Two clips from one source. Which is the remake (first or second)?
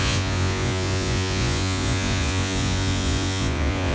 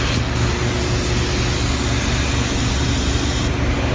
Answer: first